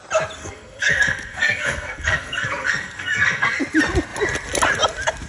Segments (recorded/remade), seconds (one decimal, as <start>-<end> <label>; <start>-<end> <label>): 0.0-0.4 recorded; 0.4-3.6 remade; 3.6-5.3 recorded

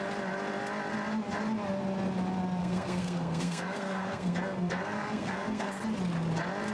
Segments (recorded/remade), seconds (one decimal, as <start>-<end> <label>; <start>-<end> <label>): 0.0-2.6 recorded; 2.6-5.8 remade; 5.8-6.7 recorded